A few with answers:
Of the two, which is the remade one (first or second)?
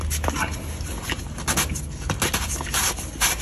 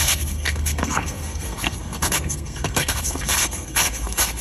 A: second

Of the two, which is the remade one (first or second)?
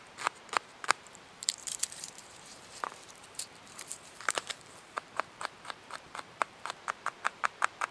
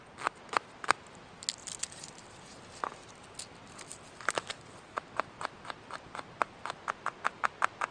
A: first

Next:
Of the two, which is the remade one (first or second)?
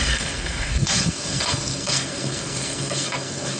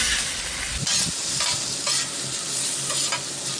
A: first